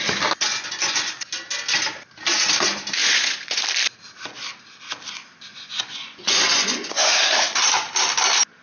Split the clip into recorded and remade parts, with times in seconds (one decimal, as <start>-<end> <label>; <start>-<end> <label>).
0.0-0.5 recorded; 0.5-1.3 remade; 1.3-3.0 recorded; 3.0-3.6 remade; 3.6-5.5 recorded; 5.5-7.2 remade; 7.2-8.6 recorded